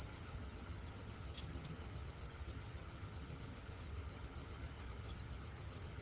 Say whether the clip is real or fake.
fake